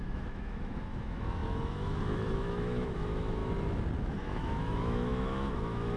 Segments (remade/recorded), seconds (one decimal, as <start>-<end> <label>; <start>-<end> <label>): 0.0-3.4 remade; 3.4-4.0 recorded; 4.0-6.0 remade